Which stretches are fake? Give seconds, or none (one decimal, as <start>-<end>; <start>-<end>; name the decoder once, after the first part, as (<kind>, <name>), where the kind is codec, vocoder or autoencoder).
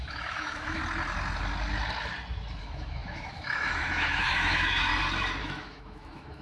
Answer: 0.0-0.8 (autoencoder, DAC-VAE); 2.6-4.9; 5.4-6.4